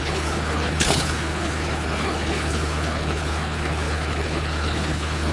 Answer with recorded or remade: remade